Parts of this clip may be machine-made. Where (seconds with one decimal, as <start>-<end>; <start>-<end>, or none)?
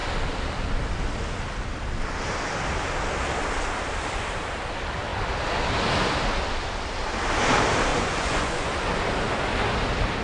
7.9-8.7